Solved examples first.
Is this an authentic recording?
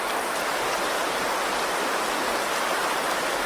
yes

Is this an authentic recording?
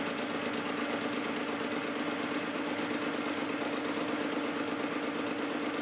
yes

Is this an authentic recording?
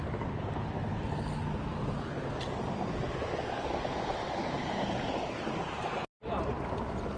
yes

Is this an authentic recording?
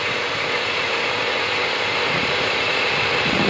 no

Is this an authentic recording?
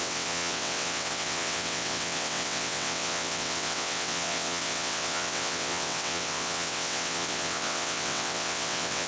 no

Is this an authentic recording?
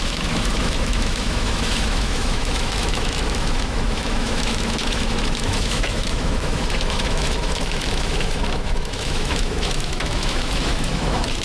no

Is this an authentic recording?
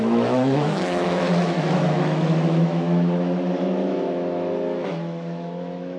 no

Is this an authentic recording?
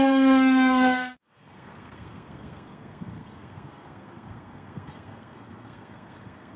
no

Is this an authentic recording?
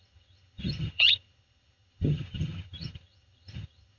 no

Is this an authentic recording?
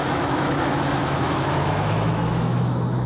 no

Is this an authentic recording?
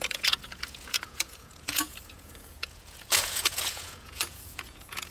no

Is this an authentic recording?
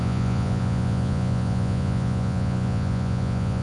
no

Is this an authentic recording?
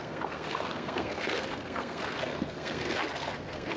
no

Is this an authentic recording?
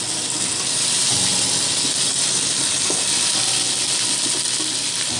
yes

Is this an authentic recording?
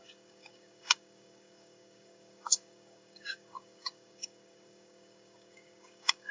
no